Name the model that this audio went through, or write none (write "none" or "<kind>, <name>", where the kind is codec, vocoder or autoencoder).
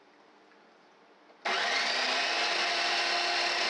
none